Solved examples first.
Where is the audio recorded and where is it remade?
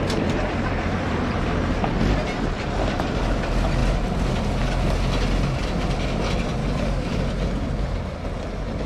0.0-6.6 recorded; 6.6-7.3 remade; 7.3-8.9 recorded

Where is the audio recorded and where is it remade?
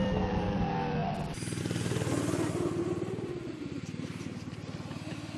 0.0-5.4 recorded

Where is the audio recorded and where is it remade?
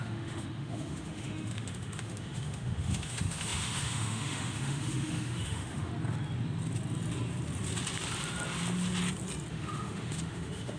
0.0-5.9 remade; 5.9-9.5 recorded; 9.5-10.8 remade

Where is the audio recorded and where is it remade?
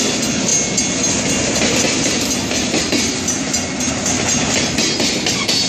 0.0-5.7 recorded